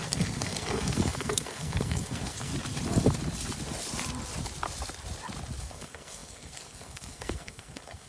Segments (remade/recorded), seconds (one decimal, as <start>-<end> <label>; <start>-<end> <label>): 0.0-2.5 remade; 2.5-5.6 recorded; 5.6-8.1 remade